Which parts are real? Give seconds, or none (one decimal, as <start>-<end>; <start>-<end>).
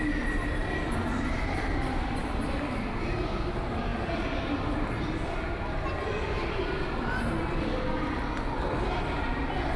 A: 0.0-9.8